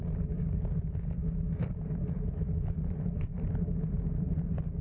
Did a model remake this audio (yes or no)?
no